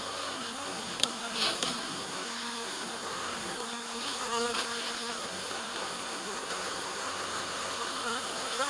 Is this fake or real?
fake